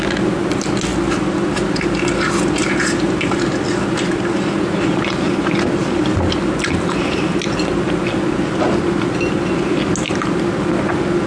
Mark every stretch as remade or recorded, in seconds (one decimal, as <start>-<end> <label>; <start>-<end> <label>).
0.0-11.3 recorded

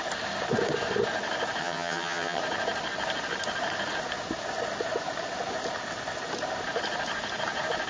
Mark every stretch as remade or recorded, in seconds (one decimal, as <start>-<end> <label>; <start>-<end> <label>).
0.0-1.6 recorded; 1.6-2.4 remade; 2.4-7.9 recorded